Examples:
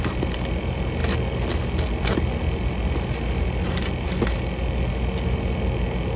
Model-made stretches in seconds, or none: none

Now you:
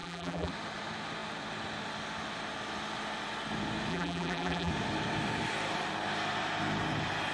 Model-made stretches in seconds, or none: 0.0-0.5 (vocoder, BigVGAN v2); 3.9-4.7

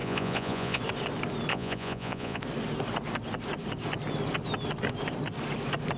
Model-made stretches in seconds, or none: 0.0-0.8 (vocoder, Vocos); 1.5-2.4

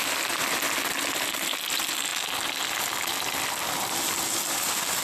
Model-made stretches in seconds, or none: none

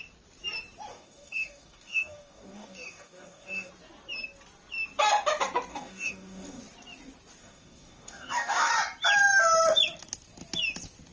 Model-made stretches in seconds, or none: 0.9-3.7 (codec, DAC); 5.7-6.6; 7.4-8.7

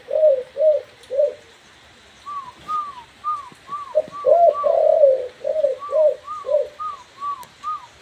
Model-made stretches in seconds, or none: 4.9-6.8 (vocoder, BigVGAN v2)

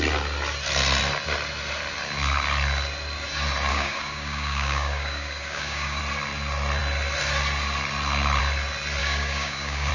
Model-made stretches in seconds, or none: 3.7-6.0 (codec, DAC); 9.0-9.9